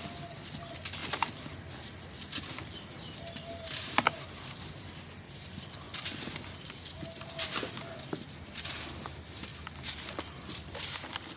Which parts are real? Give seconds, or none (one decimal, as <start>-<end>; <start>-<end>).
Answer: 0.0-1.0; 5.0-9.5; 10.4-11.4